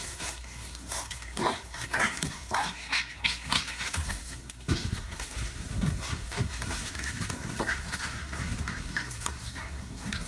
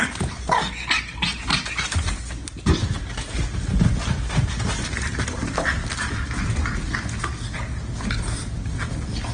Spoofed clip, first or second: first